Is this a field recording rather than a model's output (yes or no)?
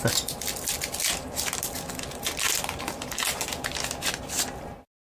yes